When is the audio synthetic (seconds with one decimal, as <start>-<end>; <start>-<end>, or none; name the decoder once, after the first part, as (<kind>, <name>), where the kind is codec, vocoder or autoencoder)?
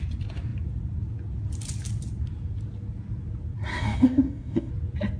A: 3.7-4.7 (codec, DAC)